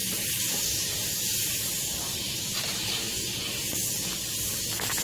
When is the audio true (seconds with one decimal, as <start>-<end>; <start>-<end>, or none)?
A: 3.0-5.0

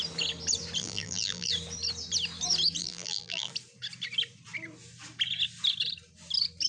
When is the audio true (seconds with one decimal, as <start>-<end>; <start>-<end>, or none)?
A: 0.0-0.8; 1.5-2.8; 3.5-6.7

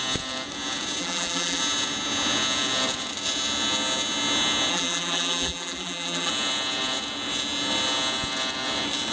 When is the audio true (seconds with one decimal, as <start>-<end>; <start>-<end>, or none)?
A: 0.0-1.0; 1.6-4.7; 6.3-9.1

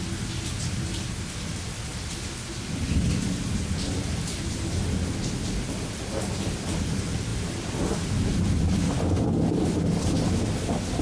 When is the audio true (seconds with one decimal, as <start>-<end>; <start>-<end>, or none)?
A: 0.0-11.0

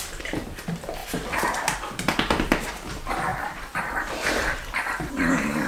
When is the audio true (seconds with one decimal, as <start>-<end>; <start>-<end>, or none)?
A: 1.0-2.4

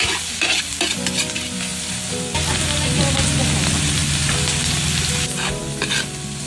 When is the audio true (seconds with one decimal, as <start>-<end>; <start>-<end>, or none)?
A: 0.0-1.7; 2.6-6.5